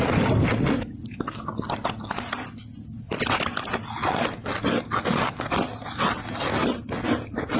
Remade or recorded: recorded